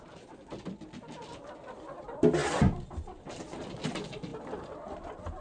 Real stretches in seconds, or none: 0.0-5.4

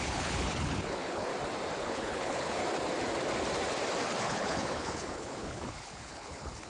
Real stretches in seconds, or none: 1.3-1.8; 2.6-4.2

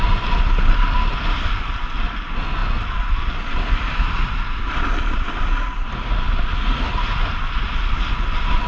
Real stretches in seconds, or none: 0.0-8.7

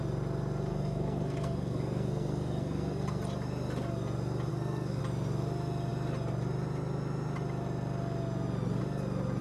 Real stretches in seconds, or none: 0.0-0.7; 3.2-4.5; 5.0-9.4